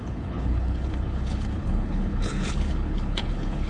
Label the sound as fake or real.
fake